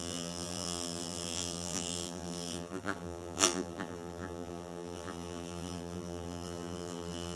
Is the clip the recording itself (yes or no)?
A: no